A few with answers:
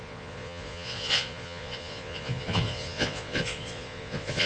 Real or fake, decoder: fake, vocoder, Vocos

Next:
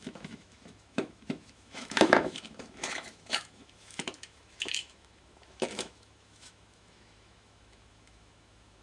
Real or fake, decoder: fake, autoencoder, DAC-VAE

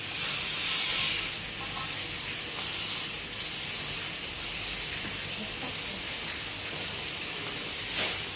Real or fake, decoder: real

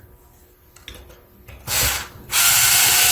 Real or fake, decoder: real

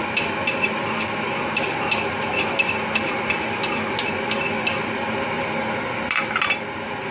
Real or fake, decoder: real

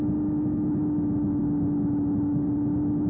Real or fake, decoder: real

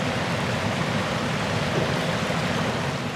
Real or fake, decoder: real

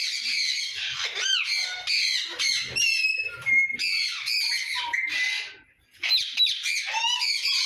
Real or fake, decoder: real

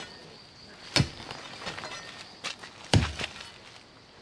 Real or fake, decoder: real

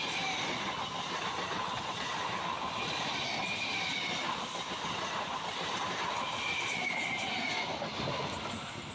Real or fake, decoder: real